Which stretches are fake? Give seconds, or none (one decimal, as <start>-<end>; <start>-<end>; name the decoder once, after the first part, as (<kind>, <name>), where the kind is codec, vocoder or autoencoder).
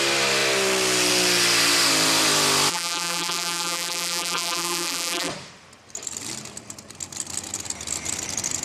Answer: 2.7-5.3 (vocoder, BigVGAN v2)